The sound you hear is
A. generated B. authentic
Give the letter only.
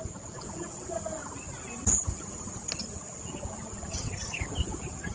B